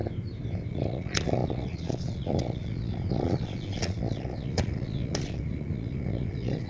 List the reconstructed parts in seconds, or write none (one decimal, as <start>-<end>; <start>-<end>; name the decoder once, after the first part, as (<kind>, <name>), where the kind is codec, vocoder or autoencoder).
0.7-6.7 (vocoder, Vocos)